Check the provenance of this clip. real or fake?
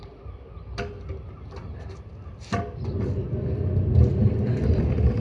real